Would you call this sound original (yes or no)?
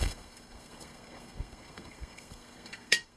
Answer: no